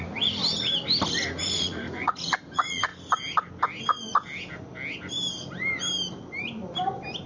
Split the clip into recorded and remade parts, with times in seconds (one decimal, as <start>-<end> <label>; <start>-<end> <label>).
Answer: 0.0-0.4 remade; 0.4-1.4 recorded; 1.4-2.9 remade; 2.9-7.3 recorded